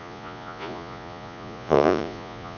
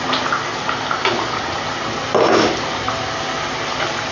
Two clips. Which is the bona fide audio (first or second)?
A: second